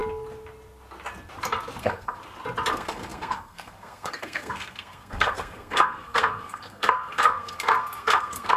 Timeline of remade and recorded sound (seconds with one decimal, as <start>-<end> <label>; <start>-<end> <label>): 0.0-1.8 recorded; 1.8-2.2 remade; 2.2-2.7 recorded; 2.7-8.6 remade